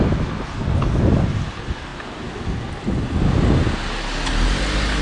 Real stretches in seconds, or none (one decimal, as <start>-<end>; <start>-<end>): 0.0-5.0